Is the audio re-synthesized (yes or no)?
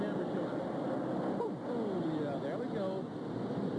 no